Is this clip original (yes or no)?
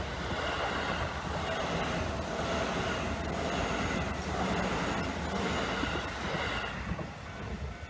yes